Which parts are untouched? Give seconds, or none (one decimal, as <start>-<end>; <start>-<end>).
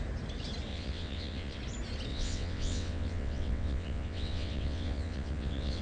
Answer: 0.0-0.7; 1.6-2.1